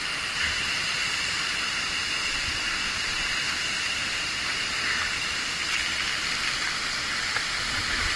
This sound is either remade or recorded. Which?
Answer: recorded